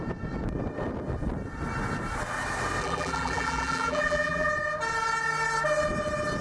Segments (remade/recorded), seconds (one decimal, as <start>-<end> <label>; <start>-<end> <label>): 0.0-2.8 recorded; 2.8-4.5 remade; 4.5-6.4 recorded